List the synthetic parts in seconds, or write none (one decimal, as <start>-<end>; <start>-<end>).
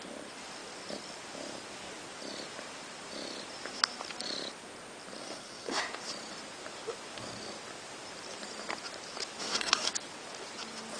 5.2-5.8; 9.4-9.9